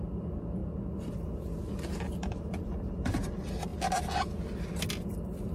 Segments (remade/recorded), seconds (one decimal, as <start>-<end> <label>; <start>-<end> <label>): 0.0-2.2 recorded; 2.2-3.3 remade; 3.3-5.5 recorded